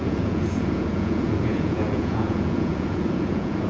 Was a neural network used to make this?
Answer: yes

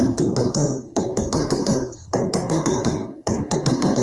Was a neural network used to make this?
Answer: yes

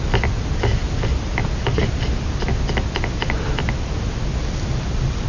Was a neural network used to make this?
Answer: no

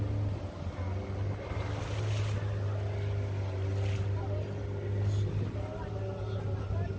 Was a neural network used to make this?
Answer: no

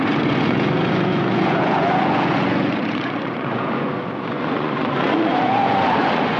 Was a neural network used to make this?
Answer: yes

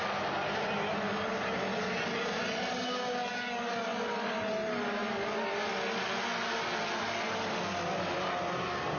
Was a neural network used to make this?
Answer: no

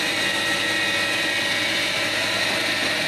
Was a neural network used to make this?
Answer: no